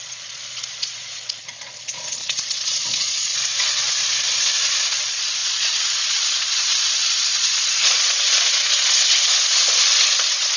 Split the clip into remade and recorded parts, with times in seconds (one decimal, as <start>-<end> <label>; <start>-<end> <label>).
0.0-10.6 remade